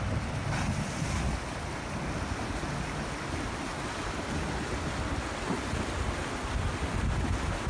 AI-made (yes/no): no